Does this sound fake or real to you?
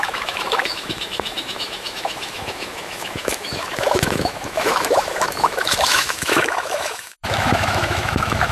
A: fake